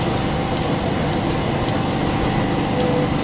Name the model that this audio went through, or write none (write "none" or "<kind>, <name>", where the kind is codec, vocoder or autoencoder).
none